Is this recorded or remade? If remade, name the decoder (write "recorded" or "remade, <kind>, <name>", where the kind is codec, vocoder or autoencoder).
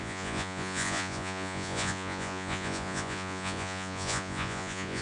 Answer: remade, vocoder, Vocos